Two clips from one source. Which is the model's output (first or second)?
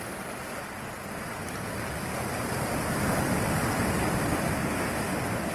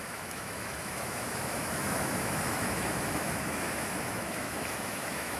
second